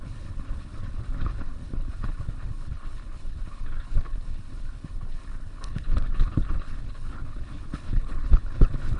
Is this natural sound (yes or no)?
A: no